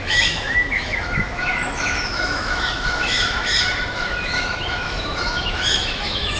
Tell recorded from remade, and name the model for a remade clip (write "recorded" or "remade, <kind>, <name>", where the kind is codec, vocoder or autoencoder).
remade, autoencoder, DAC-VAE